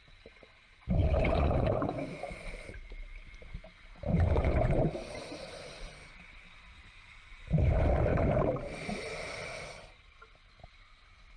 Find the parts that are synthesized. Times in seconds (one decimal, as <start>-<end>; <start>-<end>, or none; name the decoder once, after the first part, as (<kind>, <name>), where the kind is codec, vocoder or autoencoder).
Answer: 1.0-2.5 (vocoder, Vocos); 4.1-4.9